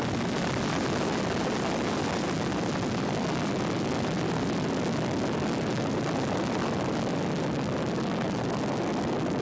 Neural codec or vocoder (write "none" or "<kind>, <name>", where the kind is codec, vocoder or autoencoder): none